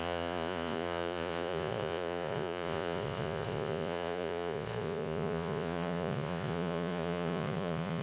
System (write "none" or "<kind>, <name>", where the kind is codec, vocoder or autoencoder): vocoder, Vocos